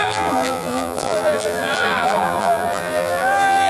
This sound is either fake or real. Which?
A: fake